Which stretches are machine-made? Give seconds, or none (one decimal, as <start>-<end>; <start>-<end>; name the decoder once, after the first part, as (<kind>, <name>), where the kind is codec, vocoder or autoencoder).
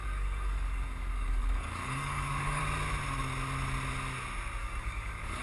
0.0-2.6 (codec, DAC); 4.6-5.4